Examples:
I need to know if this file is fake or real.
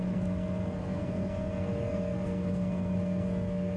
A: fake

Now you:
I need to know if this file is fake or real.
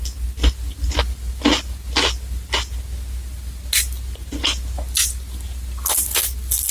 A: real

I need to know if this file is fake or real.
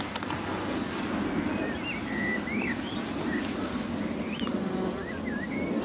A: real